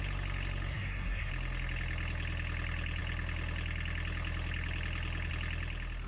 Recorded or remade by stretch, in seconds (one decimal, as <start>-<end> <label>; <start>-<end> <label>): 0.0-0.7 recorded; 0.7-1.3 remade; 1.3-6.1 recorded